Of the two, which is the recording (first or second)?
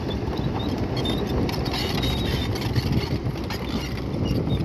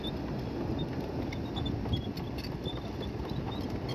second